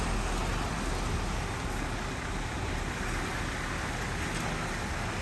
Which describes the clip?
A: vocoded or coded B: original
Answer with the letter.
B